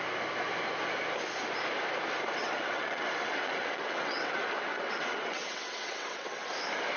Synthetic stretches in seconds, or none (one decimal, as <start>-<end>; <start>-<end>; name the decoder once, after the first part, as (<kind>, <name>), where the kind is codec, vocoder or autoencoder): 2.4-6.5 (vocoder, WaveNeXt)